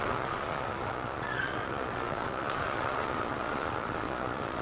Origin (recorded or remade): remade